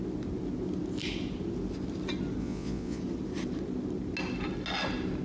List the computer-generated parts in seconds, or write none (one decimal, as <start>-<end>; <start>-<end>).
2.4-3.0